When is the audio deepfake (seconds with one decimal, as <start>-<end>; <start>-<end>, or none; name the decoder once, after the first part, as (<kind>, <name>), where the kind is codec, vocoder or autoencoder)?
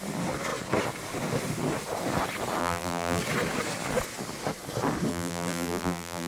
2.6-3.2 (vocoder, BigVGAN v2); 5.1-6.3